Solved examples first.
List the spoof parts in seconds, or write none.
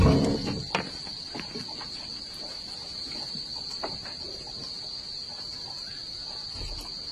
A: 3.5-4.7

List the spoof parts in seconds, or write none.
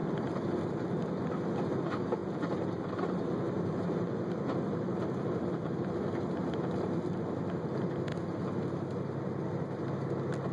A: 2.2-5.9